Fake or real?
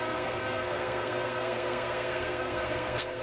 fake